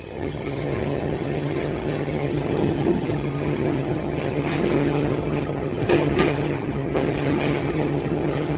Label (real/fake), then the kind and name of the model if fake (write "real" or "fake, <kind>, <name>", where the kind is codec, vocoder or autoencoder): fake, vocoder, HiFi-GAN